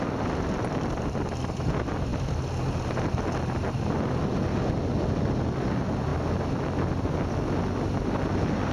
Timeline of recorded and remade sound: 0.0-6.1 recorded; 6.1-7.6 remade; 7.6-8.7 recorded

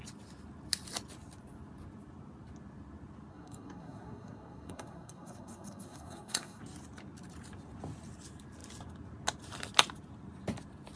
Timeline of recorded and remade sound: 0.0-3.3 recorded; 3.3-6.6 remade; 6.6-11.0 recorded